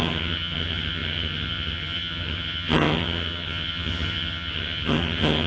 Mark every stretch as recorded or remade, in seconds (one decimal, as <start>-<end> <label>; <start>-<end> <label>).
0.0-5.5 remade